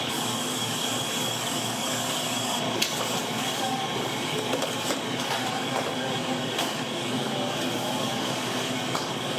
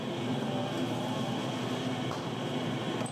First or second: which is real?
second